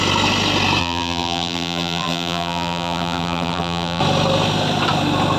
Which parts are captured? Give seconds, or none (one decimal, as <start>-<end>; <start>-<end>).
0.0-0.8; 4.0-5.4